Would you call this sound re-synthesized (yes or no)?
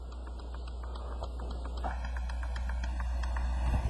no